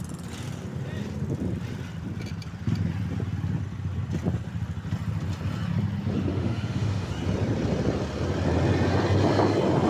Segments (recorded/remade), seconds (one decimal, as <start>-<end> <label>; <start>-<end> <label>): 0.0-6.3 recorded; 6.3-7.1 remade; 7.1-9.9 recorded